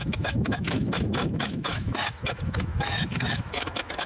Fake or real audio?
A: fake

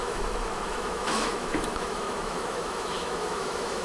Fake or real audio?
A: fake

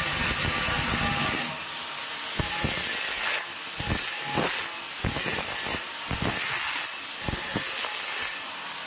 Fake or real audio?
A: real